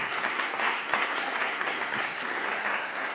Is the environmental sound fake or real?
fake